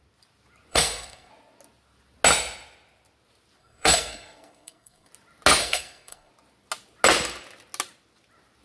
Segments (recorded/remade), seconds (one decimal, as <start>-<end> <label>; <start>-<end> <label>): 0.0-0.7 recorded; 0.7-1.3 remade; 1.3-3.6 recorded; 3.6-5.1 remade; 5.1-5.6 recorded; 5.6-6.3 remade; 6.3-8.6 recorded